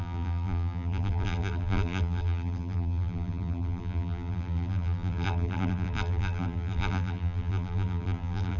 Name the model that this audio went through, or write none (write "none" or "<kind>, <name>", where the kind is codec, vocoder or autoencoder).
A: vocoder, BigVGAN v2